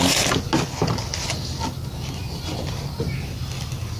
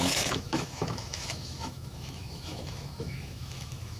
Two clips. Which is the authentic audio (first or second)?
first